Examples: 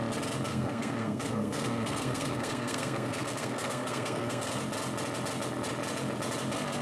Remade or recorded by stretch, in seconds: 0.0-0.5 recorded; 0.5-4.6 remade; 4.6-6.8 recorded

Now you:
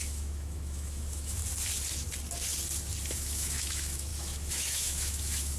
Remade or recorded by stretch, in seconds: 0.0-1.4 remade; 1.4-3.0 recorded; 3.0-5.6 remade

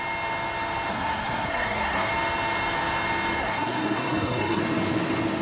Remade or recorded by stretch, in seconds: 0.0-0.9 recorded; 0.9-2.1 remade; 2.1-3.4 recorded; 3.4-4.6 remade; 4.6-5.4 recorded

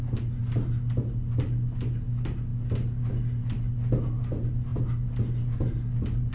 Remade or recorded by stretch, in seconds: 0.0-6.3 recorded

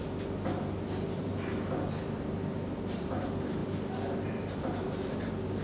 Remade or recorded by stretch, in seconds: 0.0-5.6 recorded

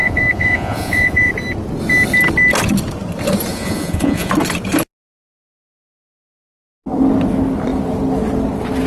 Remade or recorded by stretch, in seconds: 0.0-1.3 remade; 1.3-3.5 recorded; 3.5-4.3 remade; 4.3-8.9 recorded